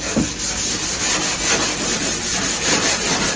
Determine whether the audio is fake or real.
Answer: real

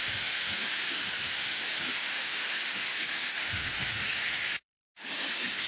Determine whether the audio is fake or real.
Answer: fake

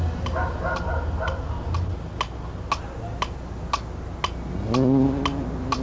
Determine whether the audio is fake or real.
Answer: real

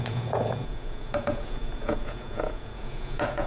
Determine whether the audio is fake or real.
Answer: fake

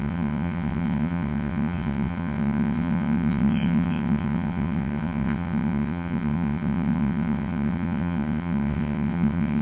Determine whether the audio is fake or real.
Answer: fake